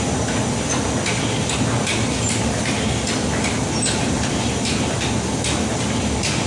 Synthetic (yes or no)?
no